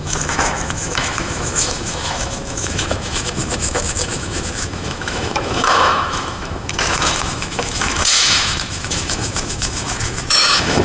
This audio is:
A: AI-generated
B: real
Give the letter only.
A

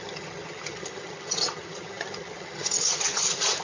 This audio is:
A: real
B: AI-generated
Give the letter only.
B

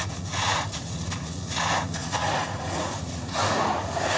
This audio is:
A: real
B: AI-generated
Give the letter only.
B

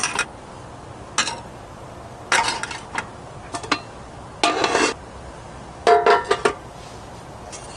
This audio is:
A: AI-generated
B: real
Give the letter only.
B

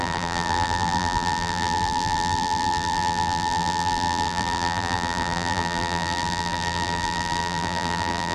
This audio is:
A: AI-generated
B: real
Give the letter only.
A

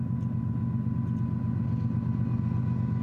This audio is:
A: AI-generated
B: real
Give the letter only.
B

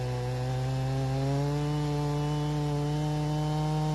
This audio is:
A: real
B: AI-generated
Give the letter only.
A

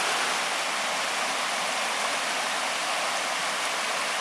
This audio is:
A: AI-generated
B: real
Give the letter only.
B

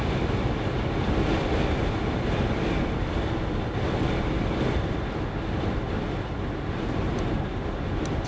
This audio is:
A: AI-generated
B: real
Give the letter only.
B